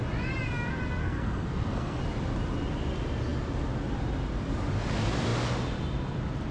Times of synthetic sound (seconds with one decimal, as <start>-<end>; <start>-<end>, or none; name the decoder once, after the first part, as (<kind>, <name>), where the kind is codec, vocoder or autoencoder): 1.0-2.0 (codec, SNAC)